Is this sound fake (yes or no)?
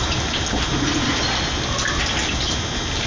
no